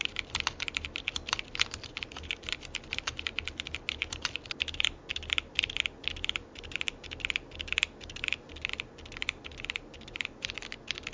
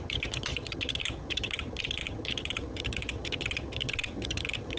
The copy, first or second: second